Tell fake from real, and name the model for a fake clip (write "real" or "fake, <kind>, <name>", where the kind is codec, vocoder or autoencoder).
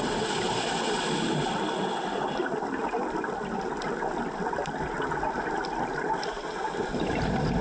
real